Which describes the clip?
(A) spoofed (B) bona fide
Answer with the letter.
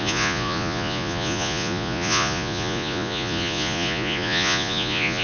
A